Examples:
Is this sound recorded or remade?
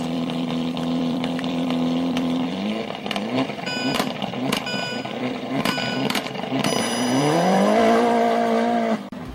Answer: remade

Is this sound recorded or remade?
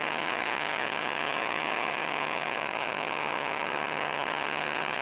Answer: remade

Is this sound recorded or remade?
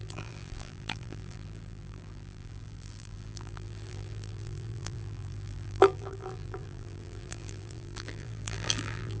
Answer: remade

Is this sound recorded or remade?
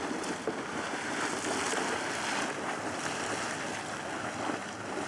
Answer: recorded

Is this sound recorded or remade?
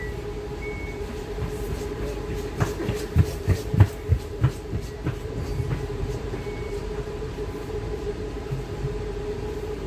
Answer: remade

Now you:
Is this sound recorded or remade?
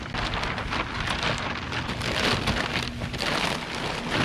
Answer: recorded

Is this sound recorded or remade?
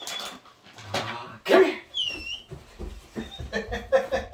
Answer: recorded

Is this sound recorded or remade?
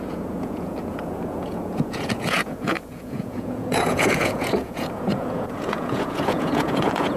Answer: remade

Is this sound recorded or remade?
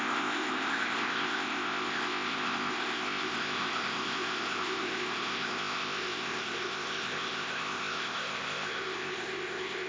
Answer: remade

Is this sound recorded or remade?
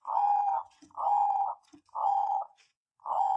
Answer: remade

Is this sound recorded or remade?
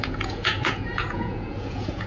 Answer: remade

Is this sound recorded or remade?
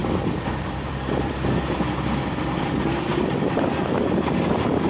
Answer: remade